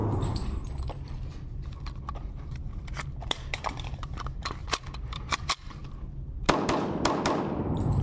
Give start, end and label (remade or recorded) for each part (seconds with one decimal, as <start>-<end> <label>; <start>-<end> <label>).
0.0-2.1 recorded; 2.1-4.6 remade; 4.6-5.1 recorded; 5.1-5.8 remade; 5.8-7.6 recorded; 7.6-8.0 remade